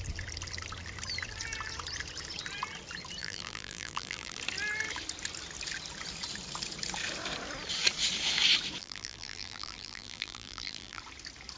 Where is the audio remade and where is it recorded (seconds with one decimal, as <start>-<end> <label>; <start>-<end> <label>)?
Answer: 0.0-3.2 recorded; 3.2-4.4 remade; 4.4-8.8 recorded; 8.8-11.0 remade; 11.0-11.6 recorded